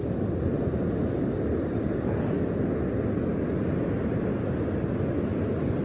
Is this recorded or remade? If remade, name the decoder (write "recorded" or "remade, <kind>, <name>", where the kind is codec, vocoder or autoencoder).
recorded